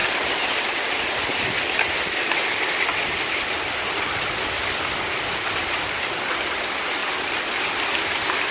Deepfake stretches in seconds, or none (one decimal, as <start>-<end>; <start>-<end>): 2.0-7.0; 7.8-8.5